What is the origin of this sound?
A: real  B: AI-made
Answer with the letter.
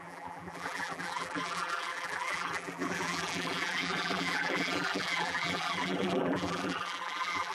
B